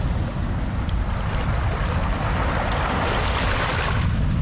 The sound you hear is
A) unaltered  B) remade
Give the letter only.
A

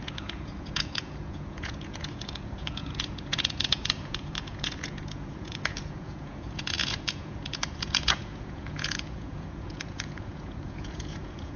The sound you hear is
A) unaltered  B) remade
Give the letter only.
B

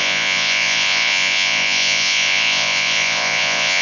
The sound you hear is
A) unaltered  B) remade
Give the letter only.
B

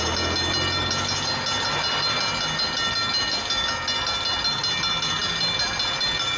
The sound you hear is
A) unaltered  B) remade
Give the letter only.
A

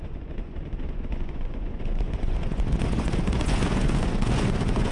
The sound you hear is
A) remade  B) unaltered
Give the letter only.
A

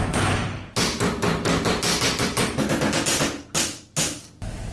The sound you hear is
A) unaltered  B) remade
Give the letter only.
A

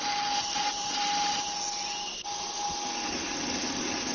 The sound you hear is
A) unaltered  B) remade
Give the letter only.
A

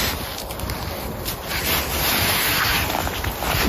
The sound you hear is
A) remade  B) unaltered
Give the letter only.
B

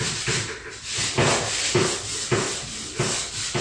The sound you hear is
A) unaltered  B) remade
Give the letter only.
A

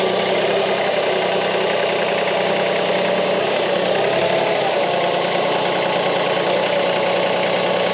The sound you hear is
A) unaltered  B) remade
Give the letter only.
A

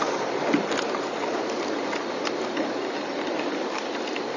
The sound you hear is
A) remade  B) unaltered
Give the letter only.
B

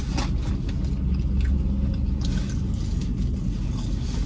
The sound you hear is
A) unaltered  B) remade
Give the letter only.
A